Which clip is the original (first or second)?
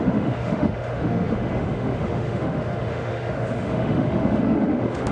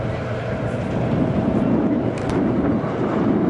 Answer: second